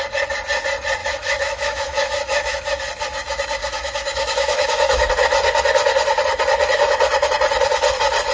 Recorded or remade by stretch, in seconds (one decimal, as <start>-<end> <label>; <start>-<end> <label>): 0.0-1.0 recorded; 1.0-2.8 remade; 2.8-3.6 recorded; 3.6-5.1 remade; 5.1-8.3 recorded